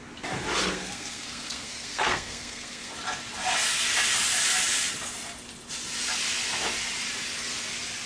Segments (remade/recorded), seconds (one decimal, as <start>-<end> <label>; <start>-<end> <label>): 0.0-0.6 recorded; 0.6-2.9 remade; 2.9-8.1 recorded